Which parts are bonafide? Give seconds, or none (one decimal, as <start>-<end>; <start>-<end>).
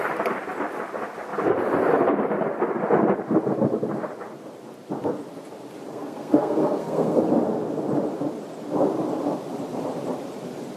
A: 0.0-5.9; 7.2-10.8